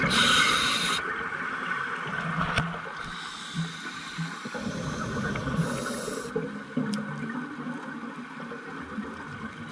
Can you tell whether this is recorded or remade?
recorded